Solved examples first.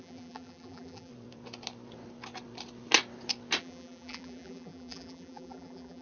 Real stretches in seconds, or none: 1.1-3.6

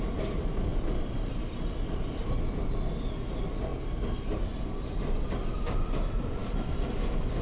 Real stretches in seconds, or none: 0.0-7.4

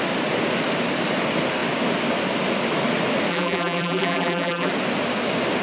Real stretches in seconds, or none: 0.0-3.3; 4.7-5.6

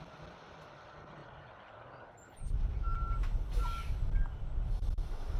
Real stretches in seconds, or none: 0.0-5.4

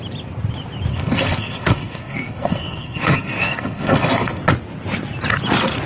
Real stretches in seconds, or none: 0.0-0.9; 4.4-5.9

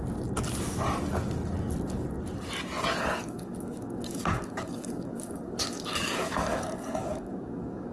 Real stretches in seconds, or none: 0.0-3.0